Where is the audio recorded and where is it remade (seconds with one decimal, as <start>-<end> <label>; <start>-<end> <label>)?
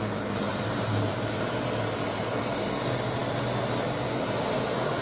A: 0.0-0.5 recorded; 0.5-1.1 remade; 1.1-5.0 recorded